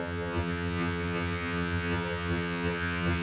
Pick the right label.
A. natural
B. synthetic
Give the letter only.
B